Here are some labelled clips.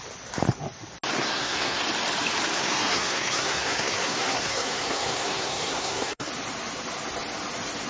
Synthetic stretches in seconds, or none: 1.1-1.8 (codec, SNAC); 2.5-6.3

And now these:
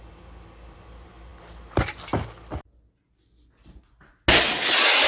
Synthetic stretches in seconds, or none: 0.0-1.3 (vocoder, BigVGAN v2); 4.4-5.1

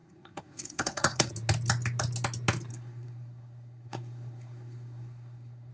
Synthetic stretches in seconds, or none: 0.0-1.3 (codec, SNAC); 2.7-5.7

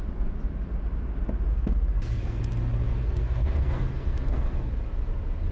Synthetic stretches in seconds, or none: 1.5-2.4 (codec, SNAC); 3.0-4.7

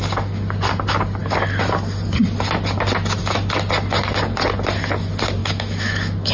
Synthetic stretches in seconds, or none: 5.4-6.3 (autoencoder, DAC-VAE)

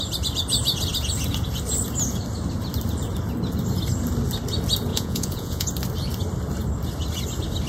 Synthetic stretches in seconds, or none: 4.9-5.7 (vocoder, Vocos)